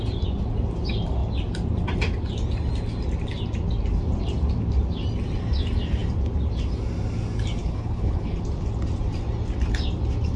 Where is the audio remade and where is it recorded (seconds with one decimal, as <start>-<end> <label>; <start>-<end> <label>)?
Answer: 0.0-7.6 recorded; 7.6-8.4 remade; 8.4-10.4 recorded